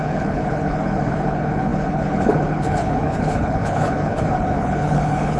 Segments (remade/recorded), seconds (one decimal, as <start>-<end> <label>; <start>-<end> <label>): 0.0-5.4 remade

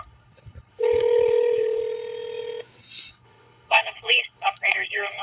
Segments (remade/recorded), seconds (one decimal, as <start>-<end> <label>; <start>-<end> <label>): 0.0-1.8 remade; 1.8-3.1 recorded; 3.1-5.2 remade

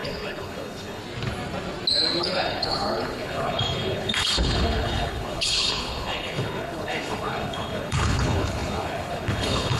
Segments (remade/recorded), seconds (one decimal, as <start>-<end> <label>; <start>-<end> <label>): 0.0-1.0 remade; 1.0-2.2 recorded; 2.2-9.8 remade

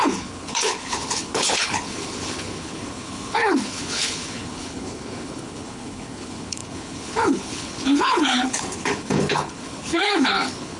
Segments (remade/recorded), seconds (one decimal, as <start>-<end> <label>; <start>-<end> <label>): 0.0-10.8 remade

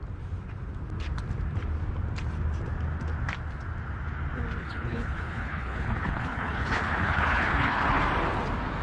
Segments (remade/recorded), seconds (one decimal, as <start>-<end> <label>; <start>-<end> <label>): 0.0-4.6 recorded; 4.6-8.0 remade; 8.0-8.8 recorded

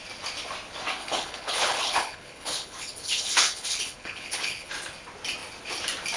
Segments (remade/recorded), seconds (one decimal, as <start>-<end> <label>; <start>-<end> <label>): 0.0-1.0 recorded; 1.0-4.7 remade; 4.7-6.2 recorded

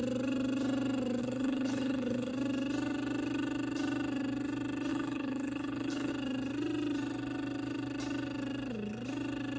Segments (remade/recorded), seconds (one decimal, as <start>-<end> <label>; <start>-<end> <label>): 0.0-1.2 recorded; 1.2-2.3 remade; 2.3-4.9 recorded; 4.9-6.1 remade; 6.1-9.6 recorded

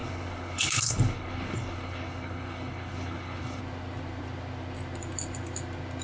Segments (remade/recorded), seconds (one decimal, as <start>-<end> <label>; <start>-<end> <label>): 0.0-3.6 remade; 3.6-6.0 recorded